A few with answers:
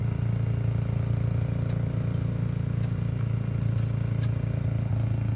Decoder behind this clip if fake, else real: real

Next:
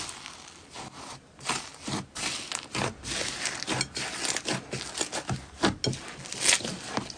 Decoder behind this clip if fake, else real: real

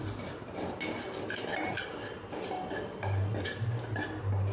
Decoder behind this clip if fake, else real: real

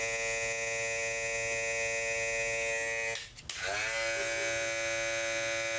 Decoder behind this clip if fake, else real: real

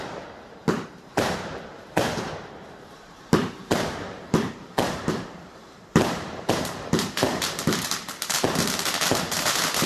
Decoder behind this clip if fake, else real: fake, vocoder, BigVGAN v2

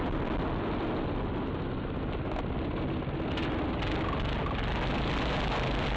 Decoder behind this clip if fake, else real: real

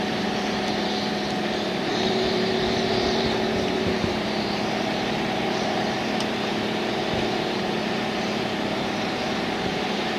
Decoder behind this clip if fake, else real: fake, vocoder, BigVGAN v2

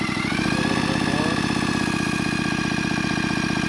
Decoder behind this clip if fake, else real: real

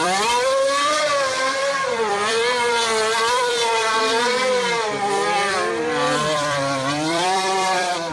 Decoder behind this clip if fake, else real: fake, vocoder, BigVGAN v2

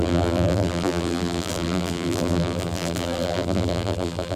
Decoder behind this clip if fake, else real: fake, vocoder, BigVGAN v2